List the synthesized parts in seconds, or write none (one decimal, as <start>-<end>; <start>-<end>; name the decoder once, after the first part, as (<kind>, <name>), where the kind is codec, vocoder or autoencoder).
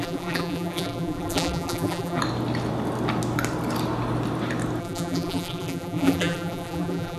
0.0-2.2 (vocoder, BigVGAN v2); 4.8-7.2